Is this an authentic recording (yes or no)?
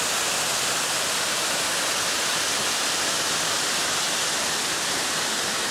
yes